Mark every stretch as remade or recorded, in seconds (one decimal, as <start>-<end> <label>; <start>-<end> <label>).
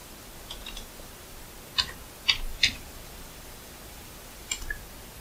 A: 0.0-1.4 remade; 1.4-2.5 recorded; 2.5-4.6 remade; 4.6-5.2 recorded